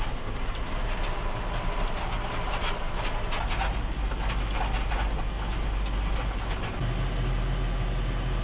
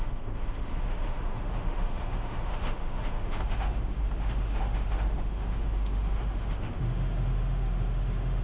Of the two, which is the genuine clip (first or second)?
first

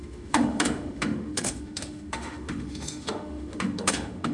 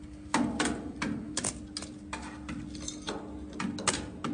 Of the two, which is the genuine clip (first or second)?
second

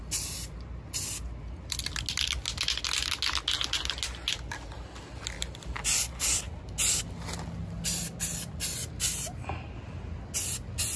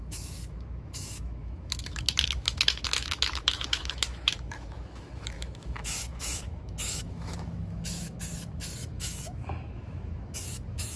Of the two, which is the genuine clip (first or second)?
first